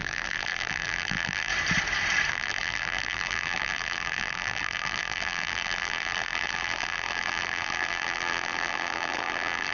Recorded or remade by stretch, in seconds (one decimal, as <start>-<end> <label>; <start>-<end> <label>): 0.0-1.5 remade; 1.5-2.3 recorded; 2.3-9.7 remade